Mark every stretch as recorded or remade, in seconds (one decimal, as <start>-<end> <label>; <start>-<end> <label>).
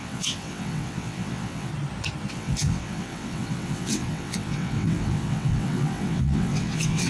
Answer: 0.0-1.7 remade; 1.7-2.3 recorded; 2.3-7.1 remade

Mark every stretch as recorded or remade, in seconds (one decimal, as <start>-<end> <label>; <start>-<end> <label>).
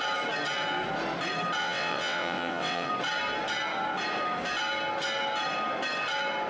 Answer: 0.0-1.6 recorded; 1.6-2.9 remade; 2.9-6.5 recorded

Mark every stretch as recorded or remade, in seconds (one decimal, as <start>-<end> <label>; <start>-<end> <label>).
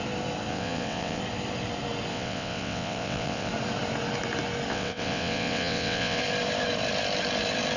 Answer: 0.0-0.5 recorded; 0.5-1.2 remade; 1.2-2.1 recorded; 2.1-3.5 remade; 3.5-4.7 recorded; 4.7-6.2 remade; 6.2-7.8 recorded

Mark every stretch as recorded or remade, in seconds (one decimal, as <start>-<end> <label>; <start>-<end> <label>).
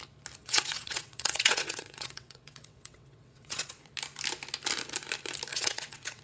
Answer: 0.0-0.4 recorded; 0.4-3.9 remade; 3.9-5.5 recorded; 5.5-6.2 remade